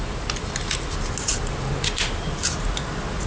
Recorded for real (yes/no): yes